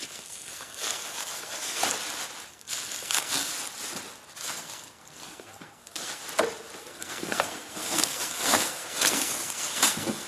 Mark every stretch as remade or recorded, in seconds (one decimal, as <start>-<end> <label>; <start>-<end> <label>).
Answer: 0.0-1.8 remade; 1.8-2.5 recorded; 2.5-3.5 remade; 3.5-4.4 recorded; 4.4-6.2 remade; 6.2-6.8 recorded; 6.8-10.3 remade